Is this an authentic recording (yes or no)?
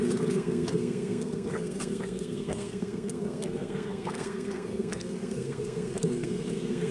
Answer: no